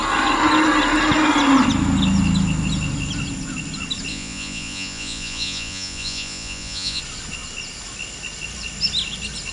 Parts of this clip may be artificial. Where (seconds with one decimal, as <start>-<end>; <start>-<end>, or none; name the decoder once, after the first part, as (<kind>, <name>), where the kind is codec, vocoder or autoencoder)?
4.1-7.0 (vocoder, Vocos)